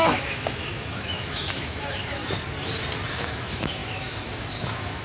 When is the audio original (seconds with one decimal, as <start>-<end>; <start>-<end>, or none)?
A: 2.2-3.1